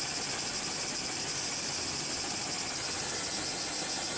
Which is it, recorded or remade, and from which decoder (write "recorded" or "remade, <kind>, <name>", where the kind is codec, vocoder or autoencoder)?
recorded